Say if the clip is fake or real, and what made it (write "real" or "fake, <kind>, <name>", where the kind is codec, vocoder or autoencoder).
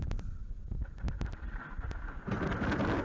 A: real